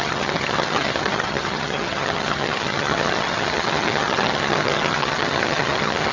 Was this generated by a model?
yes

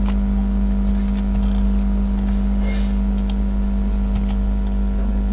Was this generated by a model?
no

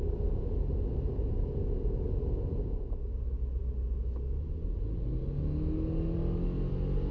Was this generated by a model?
no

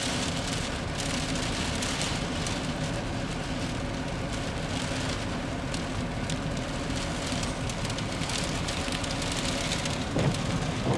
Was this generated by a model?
no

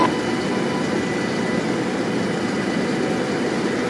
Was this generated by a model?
no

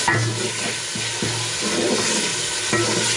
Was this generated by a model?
no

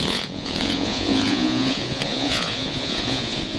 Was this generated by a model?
yes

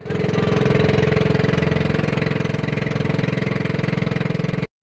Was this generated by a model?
no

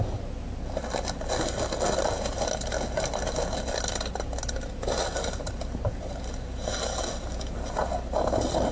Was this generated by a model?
no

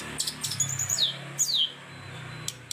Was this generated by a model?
no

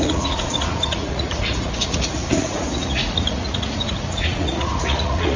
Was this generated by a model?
yes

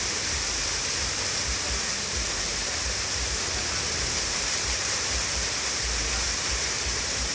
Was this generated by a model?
yes